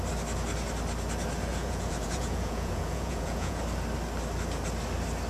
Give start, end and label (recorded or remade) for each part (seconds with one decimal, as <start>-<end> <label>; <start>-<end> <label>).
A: 0.0-1.5 recorded; 1.5-3.6 remade; 3.6-5.3 recorded